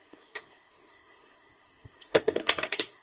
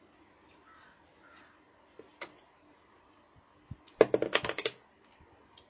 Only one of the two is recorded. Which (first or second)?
second